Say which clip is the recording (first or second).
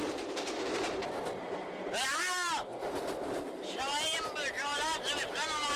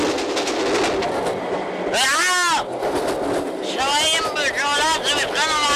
second